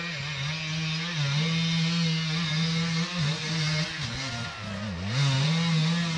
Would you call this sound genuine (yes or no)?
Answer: yes